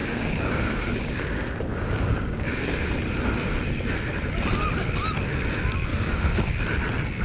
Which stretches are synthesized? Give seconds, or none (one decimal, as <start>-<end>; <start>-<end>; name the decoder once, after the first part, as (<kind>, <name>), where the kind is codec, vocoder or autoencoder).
0.0-2.9 (codec, DAC); 5.9-6.5

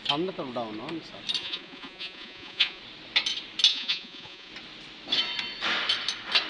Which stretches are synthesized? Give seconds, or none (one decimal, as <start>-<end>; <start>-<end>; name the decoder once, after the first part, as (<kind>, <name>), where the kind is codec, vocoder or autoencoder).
1.4-2.8 (vocoder, Vocos); 3.7-4.5

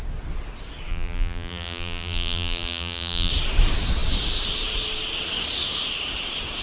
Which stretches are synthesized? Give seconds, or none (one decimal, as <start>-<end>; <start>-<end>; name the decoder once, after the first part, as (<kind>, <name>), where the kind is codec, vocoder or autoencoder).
0.9-3.3 (vocoder, BigVGAN v2)

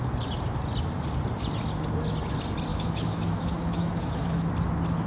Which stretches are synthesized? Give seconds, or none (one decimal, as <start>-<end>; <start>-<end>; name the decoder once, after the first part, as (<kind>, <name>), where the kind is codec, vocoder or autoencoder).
2.7-4.5 (autoencoder, DAC-VAE)

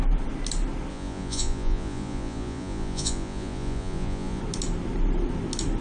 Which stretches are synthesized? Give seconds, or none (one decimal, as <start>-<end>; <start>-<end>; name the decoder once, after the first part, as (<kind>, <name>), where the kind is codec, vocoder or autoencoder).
0.9-4.4 (vocoder, Vocos)

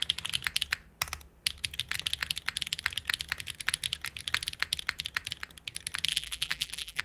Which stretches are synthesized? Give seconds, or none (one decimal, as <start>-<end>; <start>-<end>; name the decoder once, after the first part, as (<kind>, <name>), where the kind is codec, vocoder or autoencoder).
6.1-7.0 (vocoder, BigVGAN v2)